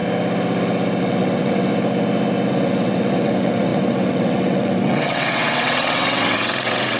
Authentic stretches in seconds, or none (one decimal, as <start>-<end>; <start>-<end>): 0.0-1.0; 1.7-2.5